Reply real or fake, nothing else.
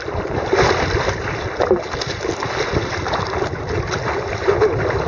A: real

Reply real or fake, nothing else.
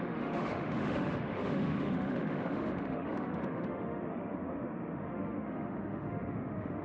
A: fake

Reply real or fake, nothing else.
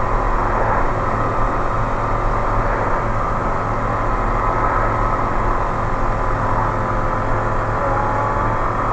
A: real